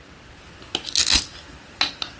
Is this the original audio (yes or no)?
yes